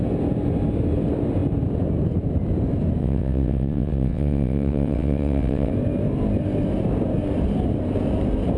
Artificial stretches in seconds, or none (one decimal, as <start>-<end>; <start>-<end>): 3.0-5.7